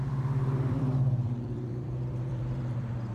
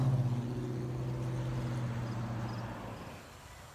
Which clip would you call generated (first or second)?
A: first